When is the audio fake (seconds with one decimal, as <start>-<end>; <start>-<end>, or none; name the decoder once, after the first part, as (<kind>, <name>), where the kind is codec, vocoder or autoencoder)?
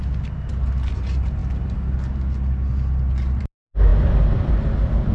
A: none